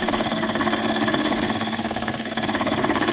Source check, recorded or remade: remade